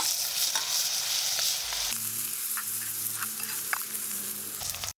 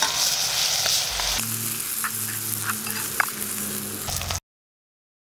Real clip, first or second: second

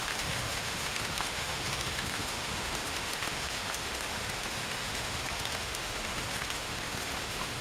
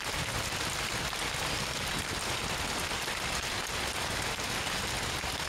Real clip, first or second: second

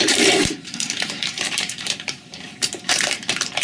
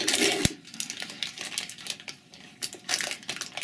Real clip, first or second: second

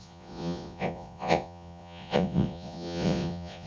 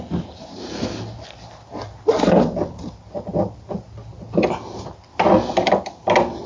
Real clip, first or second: second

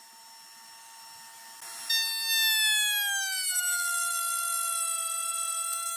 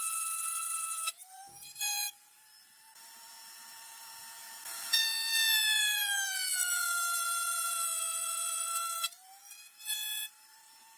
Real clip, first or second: first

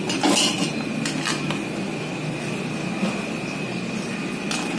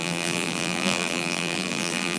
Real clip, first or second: first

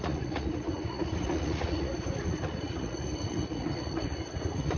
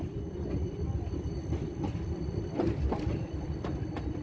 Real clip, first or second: second